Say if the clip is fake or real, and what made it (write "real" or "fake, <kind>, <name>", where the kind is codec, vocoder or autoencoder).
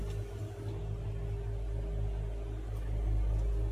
real